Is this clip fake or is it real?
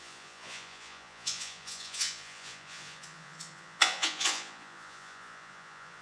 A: fake